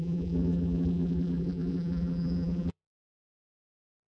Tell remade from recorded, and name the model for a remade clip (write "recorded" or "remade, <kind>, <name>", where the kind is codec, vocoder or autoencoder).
remade, vocoder, BigVGAN v2